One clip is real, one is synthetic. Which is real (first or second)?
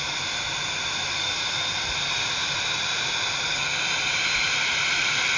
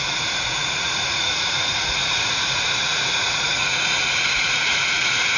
first